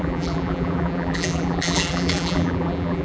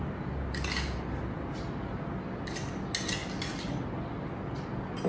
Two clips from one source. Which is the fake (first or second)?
first